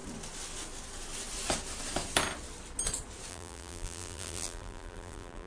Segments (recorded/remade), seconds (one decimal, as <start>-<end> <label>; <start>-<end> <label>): 0.0-3.3 recorded; 3.3-5.5 remade